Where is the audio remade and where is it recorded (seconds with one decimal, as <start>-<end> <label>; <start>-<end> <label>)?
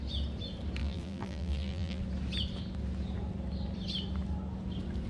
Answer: 0.0-0.8 recorded; 0.8-2.0 remade; 2.0-5.1 recorded